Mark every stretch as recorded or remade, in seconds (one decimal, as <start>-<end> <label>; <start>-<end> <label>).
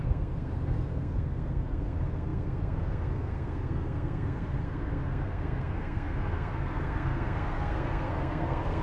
0.0-8.8 remade